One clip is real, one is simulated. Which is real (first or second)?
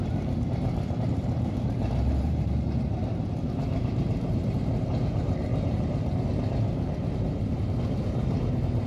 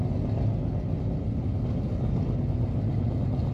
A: second